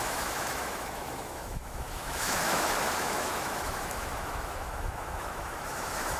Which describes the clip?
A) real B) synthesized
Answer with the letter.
B